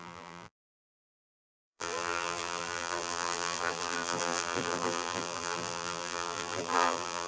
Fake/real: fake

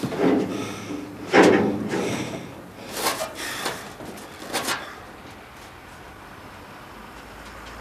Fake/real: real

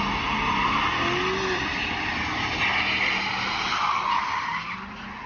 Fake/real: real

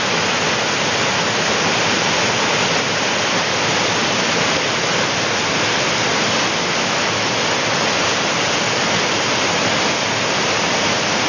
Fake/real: real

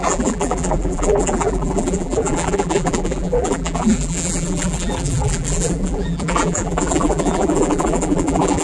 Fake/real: fake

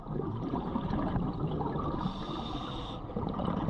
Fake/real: real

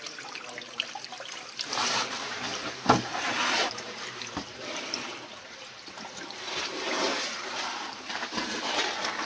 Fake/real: fake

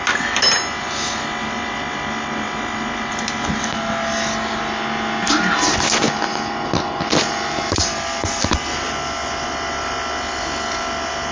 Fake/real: real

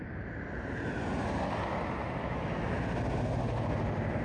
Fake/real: real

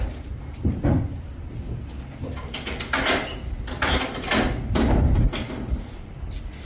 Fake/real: real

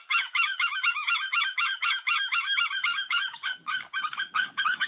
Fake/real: fake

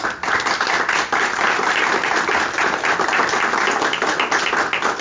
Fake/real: real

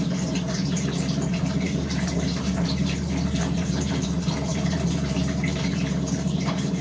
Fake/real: fake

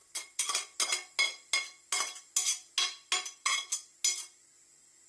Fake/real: real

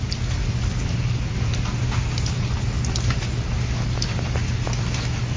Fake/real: real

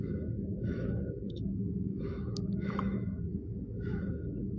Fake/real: fake